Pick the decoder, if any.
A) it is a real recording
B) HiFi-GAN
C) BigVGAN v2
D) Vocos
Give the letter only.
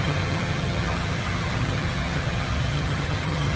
B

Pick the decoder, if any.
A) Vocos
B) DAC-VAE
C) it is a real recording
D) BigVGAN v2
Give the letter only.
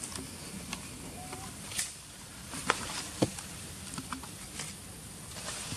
C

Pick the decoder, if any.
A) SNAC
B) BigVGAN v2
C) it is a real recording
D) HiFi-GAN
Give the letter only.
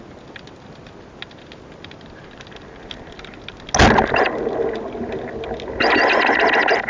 C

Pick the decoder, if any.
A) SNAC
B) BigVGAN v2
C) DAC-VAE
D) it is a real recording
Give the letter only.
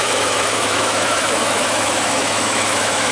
C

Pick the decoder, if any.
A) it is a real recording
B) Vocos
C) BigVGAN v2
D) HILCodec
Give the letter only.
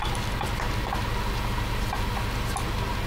A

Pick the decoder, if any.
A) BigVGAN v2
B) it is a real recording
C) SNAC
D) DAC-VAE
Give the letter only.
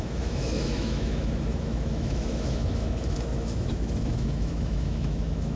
D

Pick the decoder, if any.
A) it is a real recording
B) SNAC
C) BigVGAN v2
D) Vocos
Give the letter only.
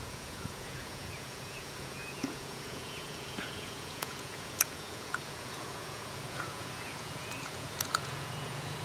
D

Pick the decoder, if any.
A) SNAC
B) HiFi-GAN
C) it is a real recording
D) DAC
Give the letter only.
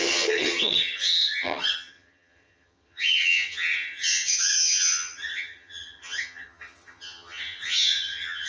B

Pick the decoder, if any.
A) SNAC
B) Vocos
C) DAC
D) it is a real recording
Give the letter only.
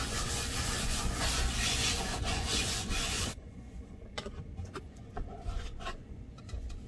B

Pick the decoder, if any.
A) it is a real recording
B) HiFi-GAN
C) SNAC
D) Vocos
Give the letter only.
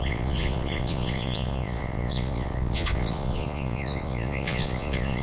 D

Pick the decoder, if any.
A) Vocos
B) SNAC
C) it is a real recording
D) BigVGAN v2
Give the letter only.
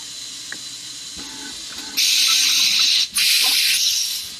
C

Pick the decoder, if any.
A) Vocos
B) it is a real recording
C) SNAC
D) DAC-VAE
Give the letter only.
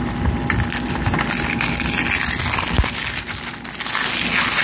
B